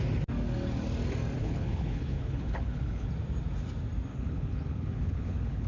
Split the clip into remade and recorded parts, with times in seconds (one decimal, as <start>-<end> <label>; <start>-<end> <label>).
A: 0.0-1.4 recorded; 1.4-3.1 remade; 3.1-4.1 recorded; 4.1-5.7 remade

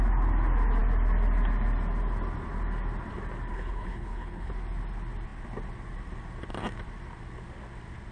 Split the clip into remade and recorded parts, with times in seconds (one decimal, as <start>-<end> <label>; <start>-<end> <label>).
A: 0.0-3.5 recorded; 3.5-4.5 remade; 4.5-8.1 recorded

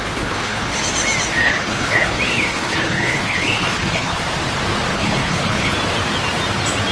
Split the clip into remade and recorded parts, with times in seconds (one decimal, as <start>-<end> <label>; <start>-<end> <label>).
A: 0.0-0.8 remade; 0.8-1.4 recorded; 1.4-4.2 remade; 4.2-4.9 recorded; 4.9-5.7 remade; 5.7-6.9 recorded